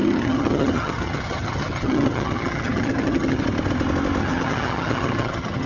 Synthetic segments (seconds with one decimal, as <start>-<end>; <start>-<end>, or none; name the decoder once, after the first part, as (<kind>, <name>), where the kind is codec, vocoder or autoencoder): 0.0-3.4 (vocoder, HiFi-GAN); 4.2-5.7